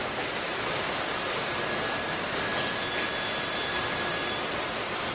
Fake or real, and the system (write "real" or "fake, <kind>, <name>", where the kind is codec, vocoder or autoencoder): real